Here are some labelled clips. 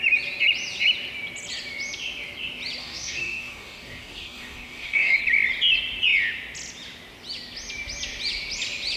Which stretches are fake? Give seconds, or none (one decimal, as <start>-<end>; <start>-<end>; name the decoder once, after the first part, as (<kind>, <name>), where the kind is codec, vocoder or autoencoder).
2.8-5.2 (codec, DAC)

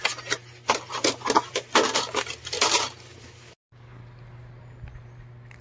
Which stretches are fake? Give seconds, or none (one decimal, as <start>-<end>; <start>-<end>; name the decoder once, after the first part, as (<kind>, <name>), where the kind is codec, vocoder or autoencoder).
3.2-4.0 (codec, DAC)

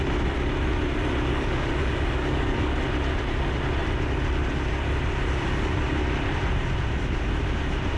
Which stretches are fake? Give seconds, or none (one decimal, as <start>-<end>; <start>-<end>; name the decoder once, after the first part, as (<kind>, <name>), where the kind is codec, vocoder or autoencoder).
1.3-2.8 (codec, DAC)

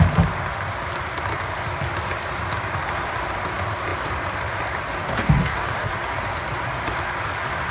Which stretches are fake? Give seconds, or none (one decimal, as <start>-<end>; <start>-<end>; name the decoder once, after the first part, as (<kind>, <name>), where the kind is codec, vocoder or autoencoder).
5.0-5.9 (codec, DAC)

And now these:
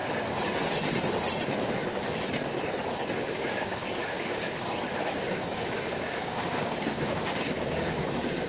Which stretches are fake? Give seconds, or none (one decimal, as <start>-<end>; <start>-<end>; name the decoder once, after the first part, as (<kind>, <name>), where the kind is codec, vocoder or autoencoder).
3.2-8.5 (codec, DAC)

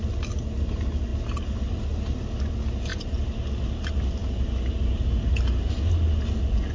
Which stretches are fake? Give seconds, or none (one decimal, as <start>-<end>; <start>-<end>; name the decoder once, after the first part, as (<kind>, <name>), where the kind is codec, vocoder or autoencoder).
none